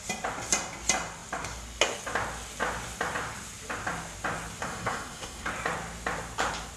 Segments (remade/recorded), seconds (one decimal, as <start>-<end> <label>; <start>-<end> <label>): 0.0-4.6 recorded; 4.6-5.5 remade; 5.5-6.8 recorded